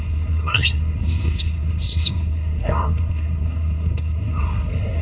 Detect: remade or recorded remade